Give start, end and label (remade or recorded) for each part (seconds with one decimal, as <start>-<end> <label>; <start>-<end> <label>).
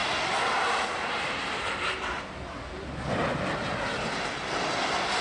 0.0-5.2 recorded